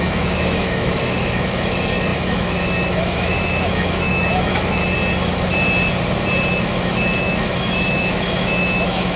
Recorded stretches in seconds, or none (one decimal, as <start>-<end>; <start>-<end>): 4.8-6.5